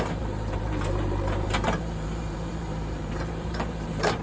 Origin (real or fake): fake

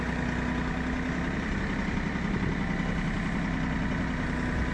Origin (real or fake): real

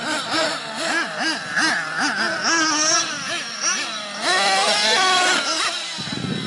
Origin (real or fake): real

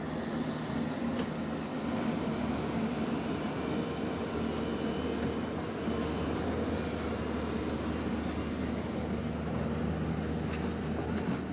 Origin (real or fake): real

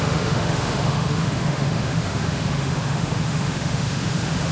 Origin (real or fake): fake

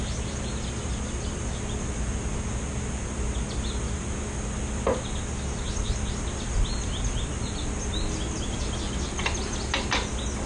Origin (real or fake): real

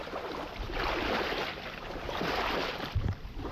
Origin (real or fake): fake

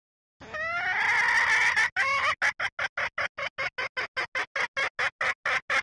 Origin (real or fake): real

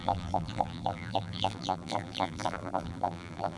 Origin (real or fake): fake